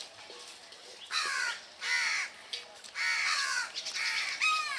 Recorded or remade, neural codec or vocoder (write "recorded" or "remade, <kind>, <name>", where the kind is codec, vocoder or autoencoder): recorded